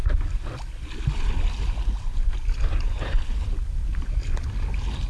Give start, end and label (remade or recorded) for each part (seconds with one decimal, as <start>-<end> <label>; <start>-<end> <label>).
0.0-5.1 recorded

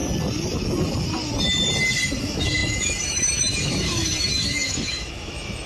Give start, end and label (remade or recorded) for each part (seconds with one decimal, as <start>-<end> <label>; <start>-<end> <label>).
0.0-2.2 recorded; 2.2-5.7 remade

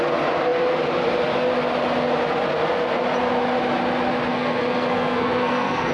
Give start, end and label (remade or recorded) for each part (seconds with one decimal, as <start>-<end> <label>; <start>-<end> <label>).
0.0-4.3 recorded; 4.3-5.9 remade

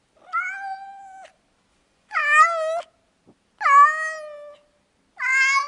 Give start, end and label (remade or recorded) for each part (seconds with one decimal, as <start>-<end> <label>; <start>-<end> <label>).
0.0-1.7 recorded; 1.7-2.2 remade; 2.2-5.7 recorded

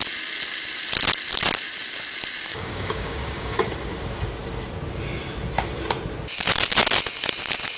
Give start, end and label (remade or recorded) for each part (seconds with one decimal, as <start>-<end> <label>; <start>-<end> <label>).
0.0-2.5 recorded; 2.5-3.6 remade; 3.6-7.8 recorded

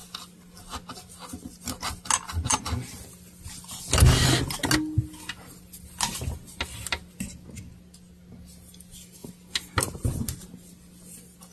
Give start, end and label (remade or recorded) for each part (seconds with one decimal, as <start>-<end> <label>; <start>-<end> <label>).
0.0-11.5 recorded